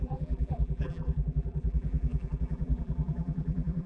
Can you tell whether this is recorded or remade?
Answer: remade